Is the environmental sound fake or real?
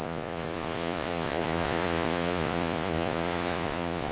fake